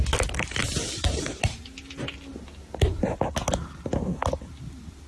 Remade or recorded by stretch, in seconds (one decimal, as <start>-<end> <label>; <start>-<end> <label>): 0.0-0.6 recorded; 0.6-1.2 remade; 1.2-5.1 recorded